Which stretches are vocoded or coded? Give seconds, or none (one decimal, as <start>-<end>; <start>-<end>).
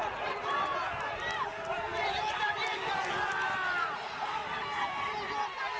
0.0-0.8; 3.8-4.4